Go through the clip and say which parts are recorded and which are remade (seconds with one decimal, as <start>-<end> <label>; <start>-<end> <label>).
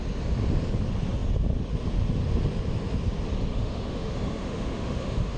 0.0-3.5 recorded; 3.5-5.4 remade